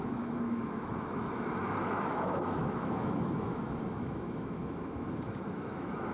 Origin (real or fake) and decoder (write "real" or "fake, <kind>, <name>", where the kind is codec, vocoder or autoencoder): fake, autoencoder, DAC-VAE